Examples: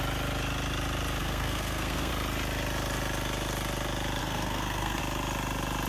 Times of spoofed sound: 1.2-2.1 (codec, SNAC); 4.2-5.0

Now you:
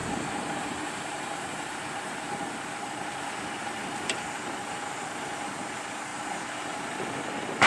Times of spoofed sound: 0.0-4.6 (vocoder, BigVGAN v2); 6.1-6.8

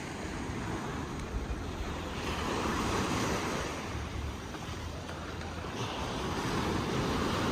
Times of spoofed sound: 0.9-5.0 (vocoder, BigVGAN v2)